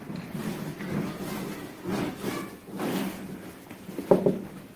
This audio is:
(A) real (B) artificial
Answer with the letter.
A